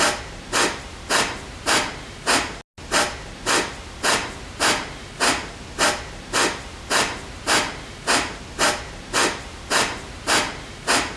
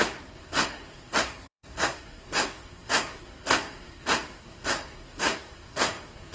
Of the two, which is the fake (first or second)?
second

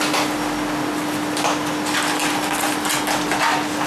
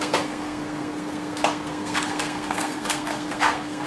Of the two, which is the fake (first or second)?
second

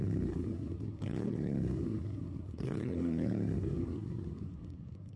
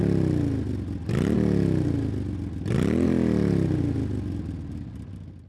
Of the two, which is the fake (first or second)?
first